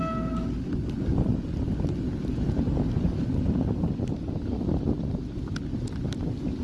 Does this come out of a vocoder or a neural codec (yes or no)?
no